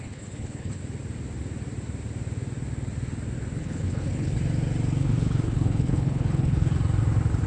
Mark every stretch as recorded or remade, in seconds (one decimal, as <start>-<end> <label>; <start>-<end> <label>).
0.0-0.8 remade; 0.8-3.6 recorded; 3.6-4.4 remade; 4.4-5.0 recorded; 5.0-6.7 remade; 6.7-7.5 recorded